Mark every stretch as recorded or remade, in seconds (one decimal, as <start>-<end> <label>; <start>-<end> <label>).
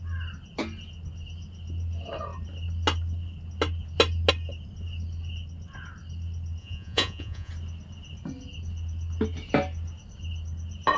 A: 0.0-6.6 recorded; 6.6-7.5 remade; 7.5-11.0 recorded